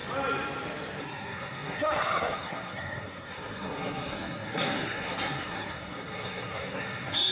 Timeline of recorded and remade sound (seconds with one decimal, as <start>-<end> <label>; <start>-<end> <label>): 0.0-1.0 recorded; 1.0-7.3 remade